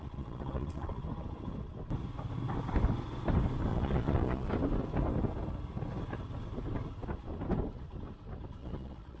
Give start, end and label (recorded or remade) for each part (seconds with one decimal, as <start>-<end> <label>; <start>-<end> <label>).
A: 0.0-1.0 remade; 1.0-3.7 recorded; 3.7-4.5 remade; 4.5-8.6 recorded; 8.6-9.2 remade